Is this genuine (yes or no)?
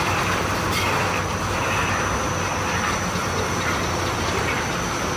yes